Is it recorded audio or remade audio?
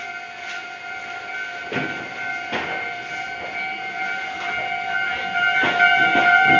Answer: recorded